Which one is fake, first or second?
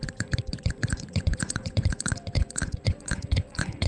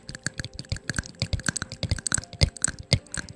first